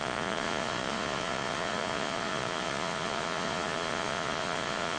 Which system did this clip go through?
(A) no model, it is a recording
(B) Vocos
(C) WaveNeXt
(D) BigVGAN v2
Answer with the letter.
B